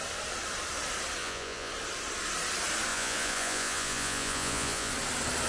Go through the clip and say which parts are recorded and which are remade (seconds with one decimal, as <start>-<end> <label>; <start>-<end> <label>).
0.0-1.2 recorded; 1.2-1.7 remade; 1.7-2.9 recorded; 2.9-4.9 remade; 4.9-5.5 recorded